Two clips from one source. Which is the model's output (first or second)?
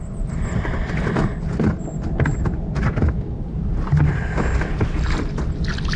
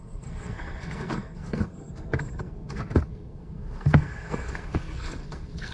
second